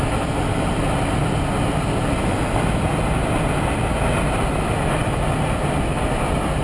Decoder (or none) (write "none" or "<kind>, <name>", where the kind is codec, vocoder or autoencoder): none